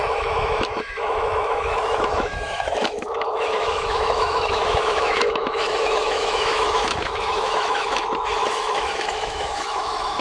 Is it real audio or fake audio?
fake